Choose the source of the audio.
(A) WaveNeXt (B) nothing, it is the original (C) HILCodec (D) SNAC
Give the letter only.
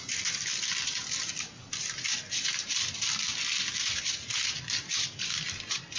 B